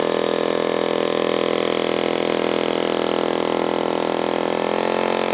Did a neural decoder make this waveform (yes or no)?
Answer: no